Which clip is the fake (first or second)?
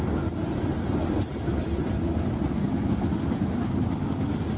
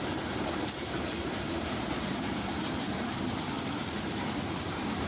second